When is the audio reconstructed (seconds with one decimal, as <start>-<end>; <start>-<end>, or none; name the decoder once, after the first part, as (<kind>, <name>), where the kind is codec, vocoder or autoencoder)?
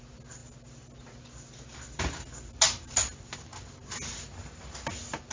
none